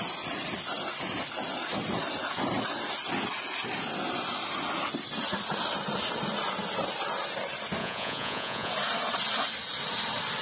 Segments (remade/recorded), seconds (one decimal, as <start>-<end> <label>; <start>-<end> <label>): 0.0-7.8 recorded; 7.8-8.7 remade; 8.7-10.4 recorded